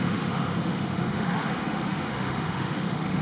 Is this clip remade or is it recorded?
remade